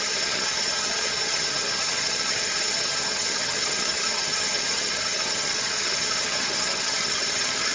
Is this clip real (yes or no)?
no